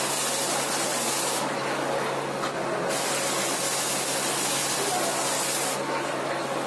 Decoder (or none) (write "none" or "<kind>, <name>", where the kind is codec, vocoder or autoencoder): none